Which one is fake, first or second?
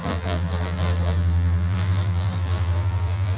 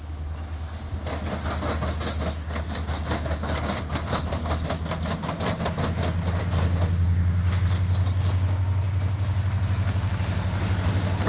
first